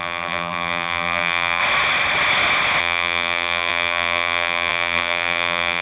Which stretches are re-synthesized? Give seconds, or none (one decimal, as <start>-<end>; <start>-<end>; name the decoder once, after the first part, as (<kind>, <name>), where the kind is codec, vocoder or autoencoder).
0.0-1.6 (vocoder, BigVGAN v2); 2.8-5.8